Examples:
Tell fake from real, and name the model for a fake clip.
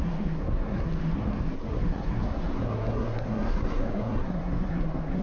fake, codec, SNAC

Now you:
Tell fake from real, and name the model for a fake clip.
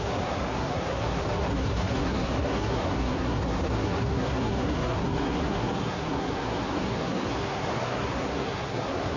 fake, codec, SNAC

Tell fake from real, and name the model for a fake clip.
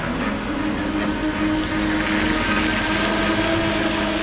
real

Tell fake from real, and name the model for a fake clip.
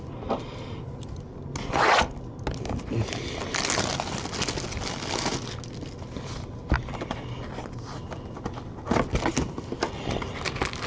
real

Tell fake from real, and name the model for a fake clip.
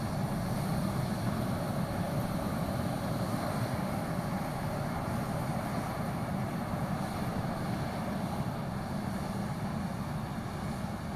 real